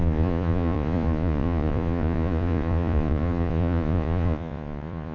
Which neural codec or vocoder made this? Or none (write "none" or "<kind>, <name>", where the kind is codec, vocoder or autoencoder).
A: vocoder, Vocos